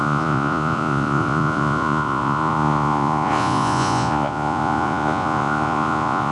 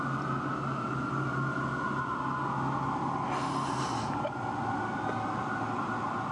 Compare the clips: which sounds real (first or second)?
second